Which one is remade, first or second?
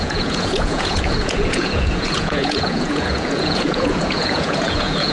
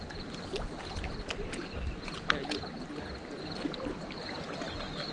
first